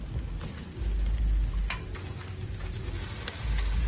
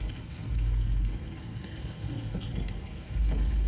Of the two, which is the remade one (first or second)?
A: second